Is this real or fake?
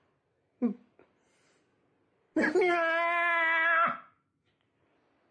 real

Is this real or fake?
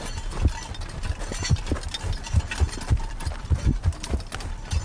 real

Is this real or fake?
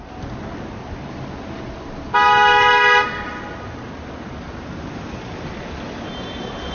real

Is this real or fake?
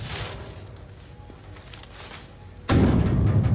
real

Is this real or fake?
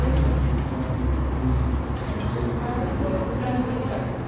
real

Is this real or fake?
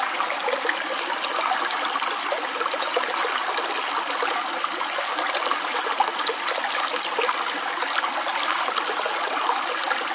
real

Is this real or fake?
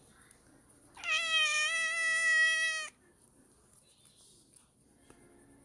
real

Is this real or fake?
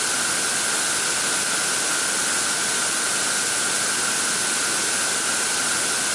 real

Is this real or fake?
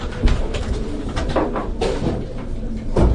fake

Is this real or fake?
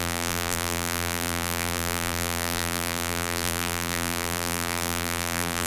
fake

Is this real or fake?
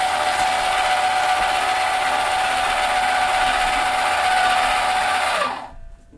real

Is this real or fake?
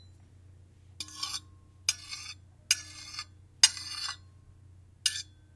real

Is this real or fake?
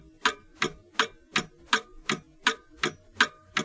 real